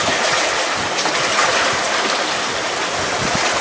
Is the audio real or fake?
real